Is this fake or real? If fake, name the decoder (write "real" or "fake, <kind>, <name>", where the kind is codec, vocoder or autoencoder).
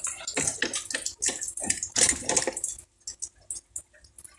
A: real